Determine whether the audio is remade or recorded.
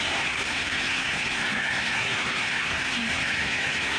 remade